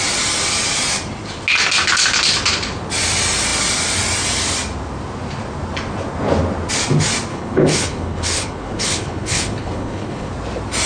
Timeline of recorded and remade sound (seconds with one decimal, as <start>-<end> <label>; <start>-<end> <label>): 0.0-7.3 recorded; 7.3-10.3 remade; 10.3-10.9 recorded